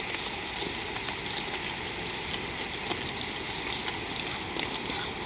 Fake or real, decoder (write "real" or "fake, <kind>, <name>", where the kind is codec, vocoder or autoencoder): real